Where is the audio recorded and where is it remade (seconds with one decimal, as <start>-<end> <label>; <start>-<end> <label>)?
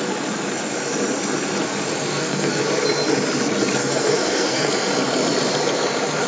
0.0-2.1 recorded; 2.1-2.6 remade; 2.6-3.8 recorded; 3.8-4.7 remade; 4.7-6.3 recorded